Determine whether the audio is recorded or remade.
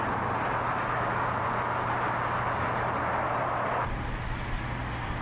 recorded